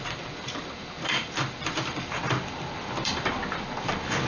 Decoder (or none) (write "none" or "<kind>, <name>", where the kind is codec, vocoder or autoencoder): vocoder, BigVGAN v2